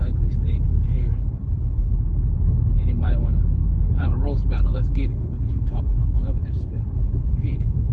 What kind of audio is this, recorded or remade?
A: remade